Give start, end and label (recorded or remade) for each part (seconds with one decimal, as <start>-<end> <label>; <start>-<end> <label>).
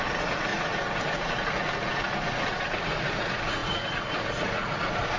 0.0-5.2 remade